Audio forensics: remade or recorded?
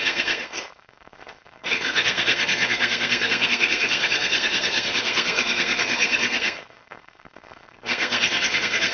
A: remade